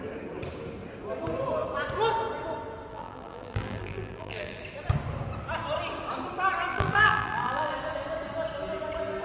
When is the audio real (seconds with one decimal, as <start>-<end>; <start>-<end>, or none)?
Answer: 0.0-2.9; 4.6-6.7; 7.7-9.2